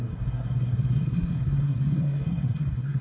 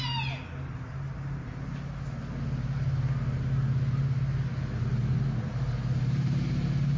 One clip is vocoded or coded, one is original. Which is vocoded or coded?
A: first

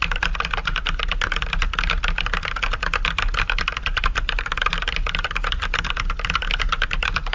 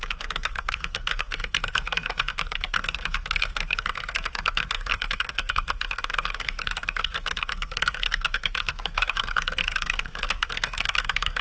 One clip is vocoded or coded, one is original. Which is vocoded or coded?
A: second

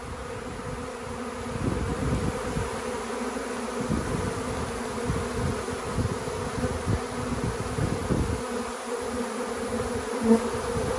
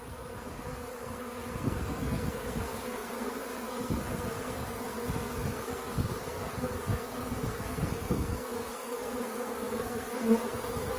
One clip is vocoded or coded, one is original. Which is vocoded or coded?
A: second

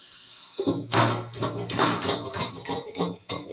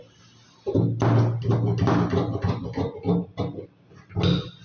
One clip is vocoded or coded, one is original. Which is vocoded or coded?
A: first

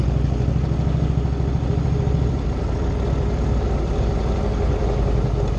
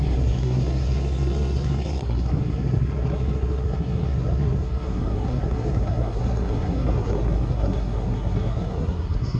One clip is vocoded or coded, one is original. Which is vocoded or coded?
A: second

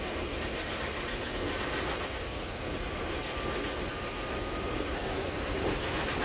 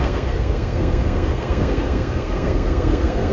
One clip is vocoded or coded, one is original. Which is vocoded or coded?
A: second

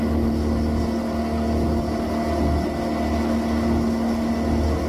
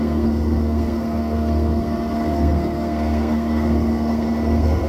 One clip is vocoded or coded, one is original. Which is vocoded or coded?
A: second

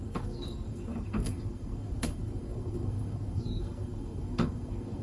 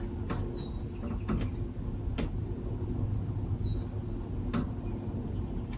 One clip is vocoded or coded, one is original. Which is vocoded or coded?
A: first